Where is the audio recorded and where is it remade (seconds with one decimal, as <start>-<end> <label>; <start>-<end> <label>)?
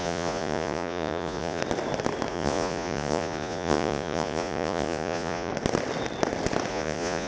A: 0.0-1.6 remade; 1.6-2.3 recorded; 2.3-5.5 remade; 5.5-6.7 recorded; 6.7-7.3 remade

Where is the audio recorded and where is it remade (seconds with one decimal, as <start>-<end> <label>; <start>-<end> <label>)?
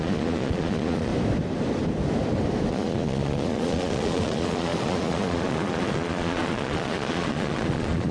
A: 0.0-1.1 remade; 1.1-2.7 recorded; 2.7-8.1 remade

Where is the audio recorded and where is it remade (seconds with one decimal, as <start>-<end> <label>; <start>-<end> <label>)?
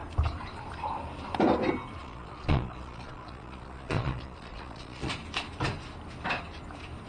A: 0.0-2.0 recorded; 2.0-5.1 remade; 5.1-7.1 recorded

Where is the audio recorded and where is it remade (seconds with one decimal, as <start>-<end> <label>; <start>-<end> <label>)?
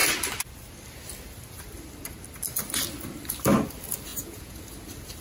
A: 0.0-4.1 recorded; 4.1-4.6 remade; 4.6-5.2 recorded